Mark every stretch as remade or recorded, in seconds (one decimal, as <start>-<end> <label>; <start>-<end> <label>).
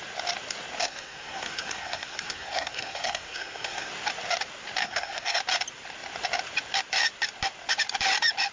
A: 0.0-0.8 recorded; 0.8-3.9 remade; 3.9-4.8 recorded; 4.8-5.4 remade; 5.4-8.5 recorded